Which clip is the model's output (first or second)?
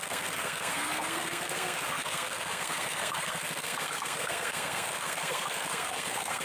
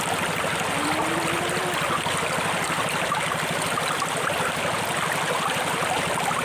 first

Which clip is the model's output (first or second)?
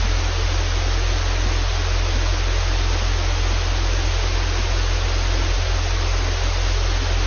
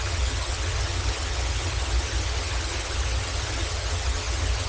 second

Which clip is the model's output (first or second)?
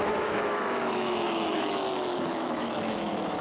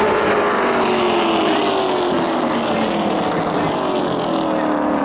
first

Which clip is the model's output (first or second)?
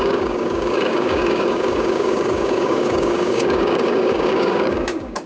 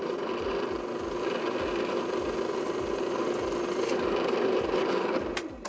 first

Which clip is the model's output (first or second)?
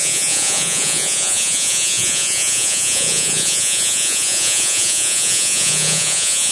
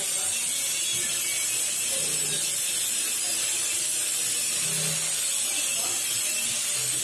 first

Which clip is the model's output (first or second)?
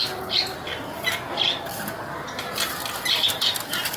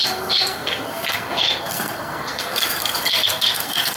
second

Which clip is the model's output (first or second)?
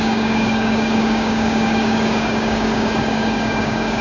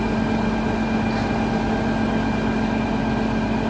first